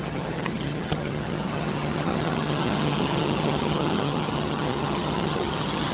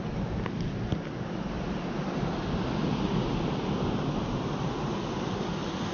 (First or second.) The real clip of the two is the second